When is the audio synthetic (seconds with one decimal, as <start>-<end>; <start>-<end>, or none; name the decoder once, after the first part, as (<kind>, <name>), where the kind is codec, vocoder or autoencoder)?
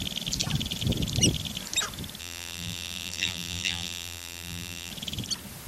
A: 2.2-4.9 (vocoder, BigVGAN v2)